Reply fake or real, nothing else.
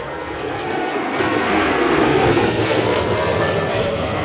fake